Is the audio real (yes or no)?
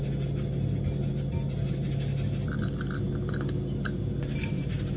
yes